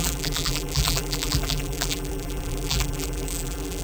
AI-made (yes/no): yes